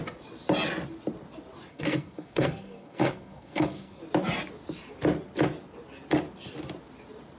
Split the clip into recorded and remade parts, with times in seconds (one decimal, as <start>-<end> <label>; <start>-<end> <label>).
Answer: 0.0-1.7 recorded; 1.7-4.0 remade; 4.0-7.4 recorded